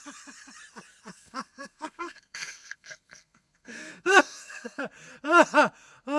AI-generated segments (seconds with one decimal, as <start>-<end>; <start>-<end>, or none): 1.1-4.8